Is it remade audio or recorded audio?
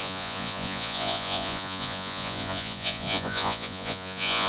remade